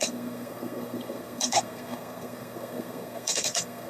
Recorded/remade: remade